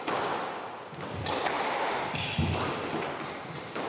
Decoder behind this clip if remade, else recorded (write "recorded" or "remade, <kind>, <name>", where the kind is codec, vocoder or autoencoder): recorded